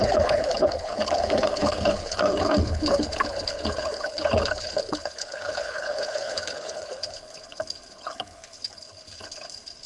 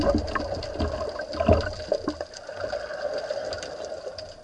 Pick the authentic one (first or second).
second